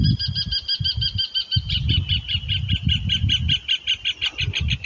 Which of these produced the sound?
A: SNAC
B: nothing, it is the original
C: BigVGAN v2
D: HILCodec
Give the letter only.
B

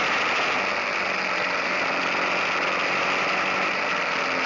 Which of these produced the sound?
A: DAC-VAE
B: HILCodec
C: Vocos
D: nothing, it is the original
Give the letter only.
D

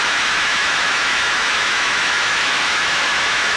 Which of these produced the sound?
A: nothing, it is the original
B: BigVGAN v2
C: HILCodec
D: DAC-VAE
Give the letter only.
D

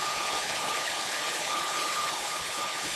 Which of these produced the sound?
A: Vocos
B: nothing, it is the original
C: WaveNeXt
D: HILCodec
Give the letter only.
D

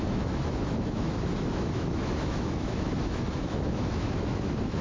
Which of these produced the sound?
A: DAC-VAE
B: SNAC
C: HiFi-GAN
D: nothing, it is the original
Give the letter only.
A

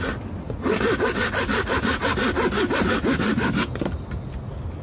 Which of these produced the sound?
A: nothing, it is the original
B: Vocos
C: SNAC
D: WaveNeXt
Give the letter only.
A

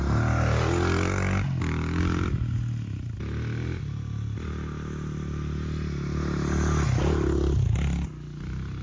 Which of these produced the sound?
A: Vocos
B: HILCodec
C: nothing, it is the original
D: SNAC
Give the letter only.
C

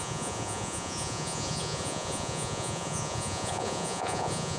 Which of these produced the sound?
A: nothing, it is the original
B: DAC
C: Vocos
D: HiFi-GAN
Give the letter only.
C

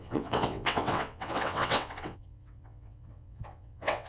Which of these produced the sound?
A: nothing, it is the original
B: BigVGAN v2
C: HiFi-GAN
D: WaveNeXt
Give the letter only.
D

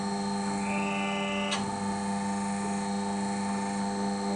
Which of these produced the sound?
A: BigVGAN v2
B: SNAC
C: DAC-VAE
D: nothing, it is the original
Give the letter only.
D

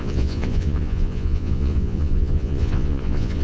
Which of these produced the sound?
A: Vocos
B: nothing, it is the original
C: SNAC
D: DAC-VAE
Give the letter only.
A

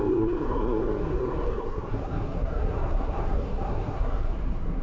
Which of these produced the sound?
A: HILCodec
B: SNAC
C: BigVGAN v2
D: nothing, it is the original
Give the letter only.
B